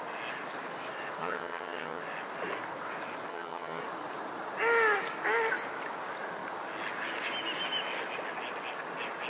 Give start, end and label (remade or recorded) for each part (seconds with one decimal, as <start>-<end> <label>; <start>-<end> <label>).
0.0-1.2 recorded; 1.2-2.0 remade; 2.0-3.3 recorded; 3.3-3.8 remade; 3.8-9.3 recorded